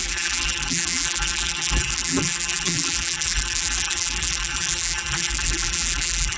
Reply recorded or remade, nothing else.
remade